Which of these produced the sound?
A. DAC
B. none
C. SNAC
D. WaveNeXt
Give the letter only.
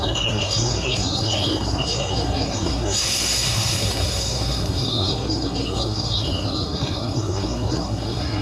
C